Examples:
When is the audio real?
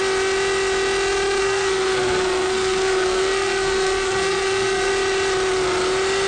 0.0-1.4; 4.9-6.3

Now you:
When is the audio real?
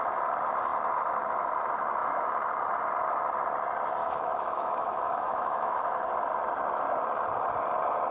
0.0-4.0; 6.1-8.1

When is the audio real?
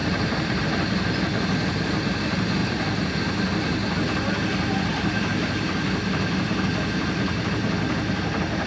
0.6-2.6; 3.1-8.7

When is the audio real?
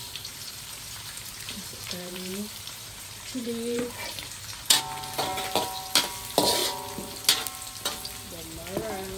4.8-9.2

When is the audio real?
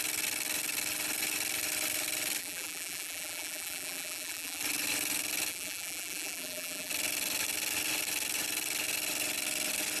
0.0-2.4; 4.6-5.5; 6.9-10.0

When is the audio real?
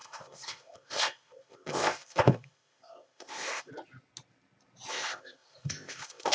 3.7-4.9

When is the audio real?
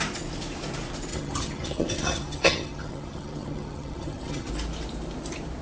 0.0-1.1; 4.5-5.6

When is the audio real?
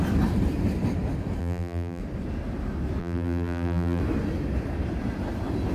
0.0-1.4; 2.0-3.0; 4.0-5.7